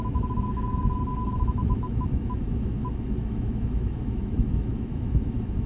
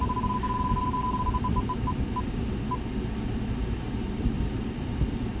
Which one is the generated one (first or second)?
first